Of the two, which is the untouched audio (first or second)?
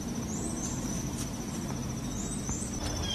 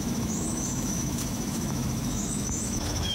first